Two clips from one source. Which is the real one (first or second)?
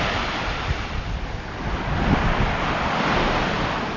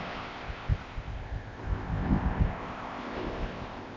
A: first